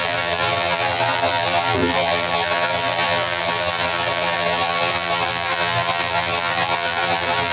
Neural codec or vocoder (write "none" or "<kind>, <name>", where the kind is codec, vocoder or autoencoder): vocoder, BigVGAN v2